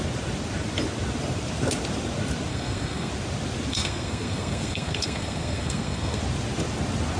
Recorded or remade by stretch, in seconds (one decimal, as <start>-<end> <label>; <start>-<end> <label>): 0.0-2.5 recorded; 2.5-3.1 remade; 3.1-3.7 recorded; 3.7-6.2 remade; 6.2-7.2 recorded